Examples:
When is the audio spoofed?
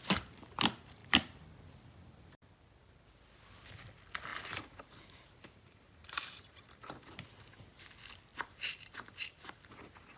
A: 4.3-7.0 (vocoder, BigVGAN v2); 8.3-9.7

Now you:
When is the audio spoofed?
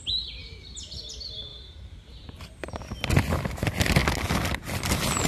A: 0.4-1.1 (vocoder, BigVGAN v2); 1.5-2.7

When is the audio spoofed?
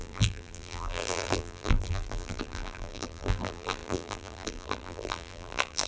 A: 0.0-5.9 (vocoder, BigVGAN v2)